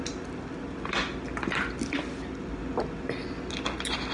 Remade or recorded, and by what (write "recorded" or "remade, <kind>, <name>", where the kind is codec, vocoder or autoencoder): recorded